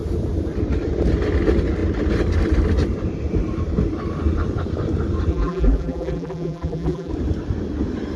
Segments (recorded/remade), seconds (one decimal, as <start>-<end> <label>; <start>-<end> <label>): 0.0-5.3 recorded; 5.3-7.1 remade; 7.1-8.2 recorded